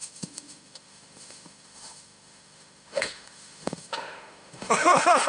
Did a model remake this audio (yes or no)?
yes